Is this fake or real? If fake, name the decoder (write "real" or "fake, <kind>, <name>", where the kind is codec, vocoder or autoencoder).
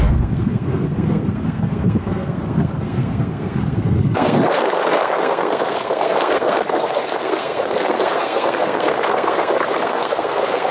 fake, codec, SNAC